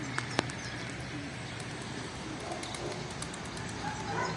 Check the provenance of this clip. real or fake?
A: real